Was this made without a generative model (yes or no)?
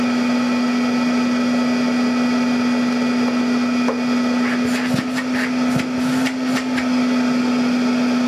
yes